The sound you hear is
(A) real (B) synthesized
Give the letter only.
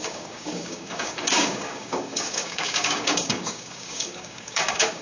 B